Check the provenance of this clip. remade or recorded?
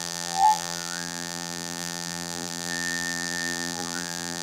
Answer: remade